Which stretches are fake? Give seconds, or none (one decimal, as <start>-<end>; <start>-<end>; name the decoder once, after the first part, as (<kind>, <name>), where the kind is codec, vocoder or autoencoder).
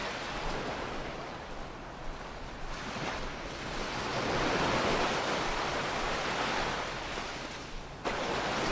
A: none